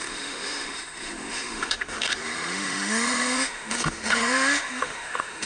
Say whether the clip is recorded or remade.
remade